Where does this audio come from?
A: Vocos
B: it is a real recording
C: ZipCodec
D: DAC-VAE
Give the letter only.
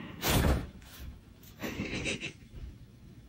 D